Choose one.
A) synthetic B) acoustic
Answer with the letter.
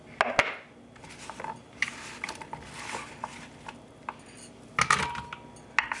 B